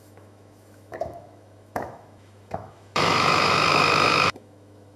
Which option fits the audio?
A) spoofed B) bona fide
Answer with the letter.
A